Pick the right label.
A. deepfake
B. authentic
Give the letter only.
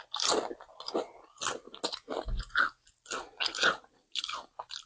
B